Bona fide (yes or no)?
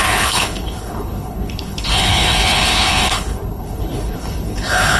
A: no